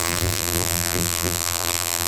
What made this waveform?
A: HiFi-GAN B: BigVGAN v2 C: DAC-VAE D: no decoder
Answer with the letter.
B